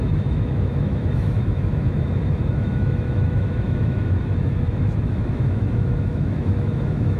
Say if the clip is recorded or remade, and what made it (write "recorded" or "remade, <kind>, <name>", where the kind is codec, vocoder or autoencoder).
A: remade, autoencoder, DAC-VAE